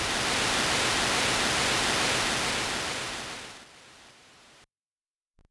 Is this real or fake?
real